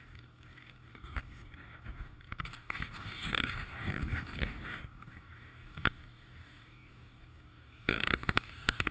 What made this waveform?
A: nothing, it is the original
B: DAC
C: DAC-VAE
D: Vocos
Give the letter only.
B